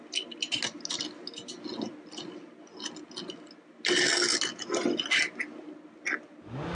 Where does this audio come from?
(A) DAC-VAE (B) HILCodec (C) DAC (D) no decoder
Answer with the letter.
D